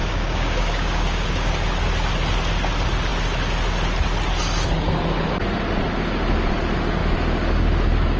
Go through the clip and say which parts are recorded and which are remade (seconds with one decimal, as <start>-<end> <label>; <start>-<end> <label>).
0.0-1.5 remade; 1.5-8.2 recorded